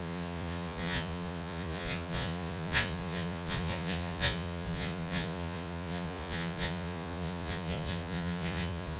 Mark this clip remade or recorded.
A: remade